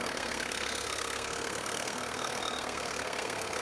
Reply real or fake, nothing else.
fake